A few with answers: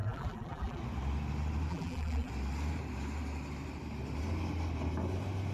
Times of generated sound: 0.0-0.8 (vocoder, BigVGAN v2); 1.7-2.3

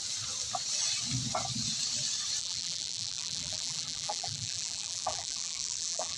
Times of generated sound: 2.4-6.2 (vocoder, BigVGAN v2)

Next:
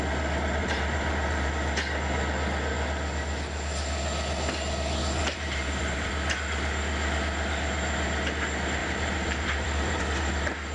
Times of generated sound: 0.6-1.5 (vocoder, BigVGAN v2); 5.2-6.1; 8.8-10.0

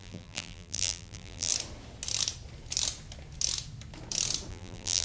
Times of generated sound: 0.0-1.5 (vocoder, BigVGAN v2); 4.5-5.0

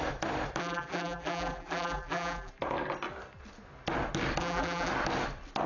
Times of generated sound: 0.6-2.5 (vocoder, BigVGAN v2); 4.4-4.9

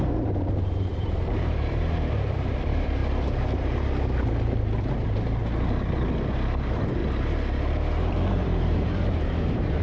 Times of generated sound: 0.0-3.0 (vocoder, BigVGAN v2); 4.8-5.4; 6.3-7.0; 8.1-9.8